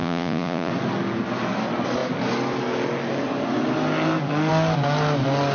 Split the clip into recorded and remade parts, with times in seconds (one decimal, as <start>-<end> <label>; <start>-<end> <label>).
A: 0.0-0.7 remade; 0.7-5.5 recorded

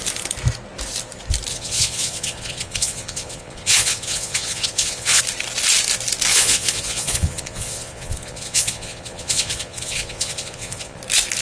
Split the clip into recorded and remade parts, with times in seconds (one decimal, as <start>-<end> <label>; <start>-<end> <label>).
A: 0.0-1.5 recorded; 1.5-5.2 remade; 5.2-6.3 recorded; 6.3-11.0 remade; 11.0-11.4 recorded

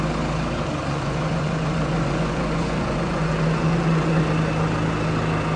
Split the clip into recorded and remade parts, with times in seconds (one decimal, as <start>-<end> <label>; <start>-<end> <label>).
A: 0.0-0.8 recorded; 0.8-4.2 remade; 4.2-5.6 recorded